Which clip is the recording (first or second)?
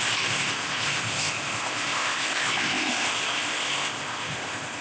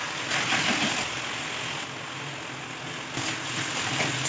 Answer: second